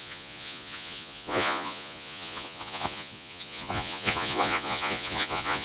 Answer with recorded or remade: remade